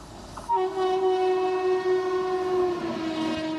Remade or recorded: recorded